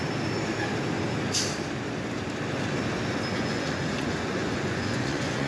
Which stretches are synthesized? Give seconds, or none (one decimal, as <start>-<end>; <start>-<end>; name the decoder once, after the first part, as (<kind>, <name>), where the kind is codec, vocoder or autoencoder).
3.3-5.5 (vocoder, Vocos)